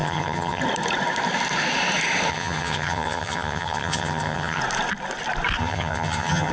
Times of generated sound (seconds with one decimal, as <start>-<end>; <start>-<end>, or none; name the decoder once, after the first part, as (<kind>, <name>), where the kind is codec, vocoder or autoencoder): 0.0-0.6 (vocoder, HiFi-GAN); 2.3-4.6; 5.6-6.5